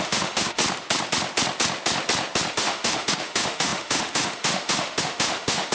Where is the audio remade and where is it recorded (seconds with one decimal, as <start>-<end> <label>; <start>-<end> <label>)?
0.0-0.6 remade; 0.6-2.5 recorded; 2.5-5.7 remade